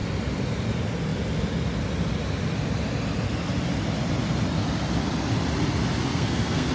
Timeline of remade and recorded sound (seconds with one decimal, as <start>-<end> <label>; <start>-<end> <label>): 0.0-6.1 recorded; 6.1-6.7 remade